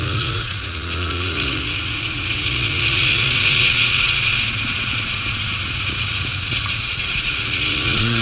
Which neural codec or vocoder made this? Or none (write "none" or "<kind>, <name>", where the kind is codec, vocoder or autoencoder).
vocoder, Vocos